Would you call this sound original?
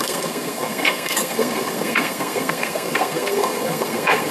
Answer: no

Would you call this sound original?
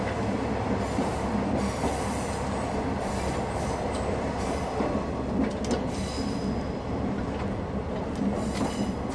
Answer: yes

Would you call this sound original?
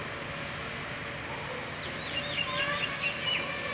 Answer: yes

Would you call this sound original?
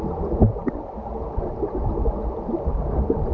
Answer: yes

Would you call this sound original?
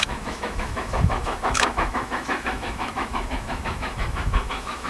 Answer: no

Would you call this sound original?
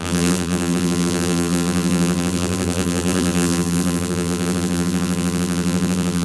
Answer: no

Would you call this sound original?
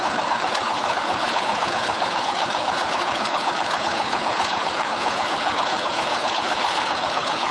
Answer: no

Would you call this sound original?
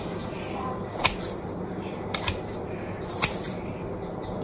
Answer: yes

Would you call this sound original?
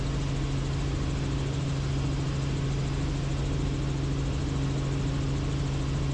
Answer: yes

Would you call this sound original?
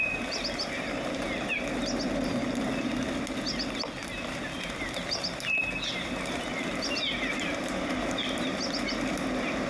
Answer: yes